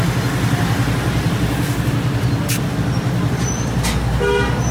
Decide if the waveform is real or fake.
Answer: real